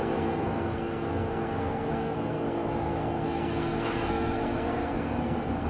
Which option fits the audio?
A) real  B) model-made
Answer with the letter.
B